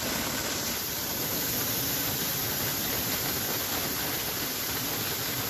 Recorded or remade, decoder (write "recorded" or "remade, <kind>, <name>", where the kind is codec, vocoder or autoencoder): remade, vocoder, BigVGAN v2